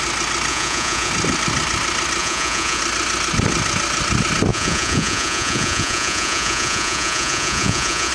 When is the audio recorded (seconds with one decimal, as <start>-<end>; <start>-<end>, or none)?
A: 0.0-0.5; 1.1-2.2; 2.8-4.5